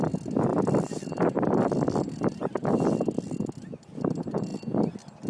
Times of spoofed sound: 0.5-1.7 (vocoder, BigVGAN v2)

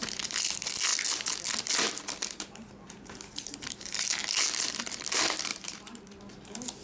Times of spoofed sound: 5.5-6.2 (vocoder, BigVGAN v2)